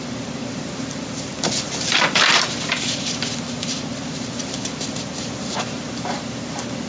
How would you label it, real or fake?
fake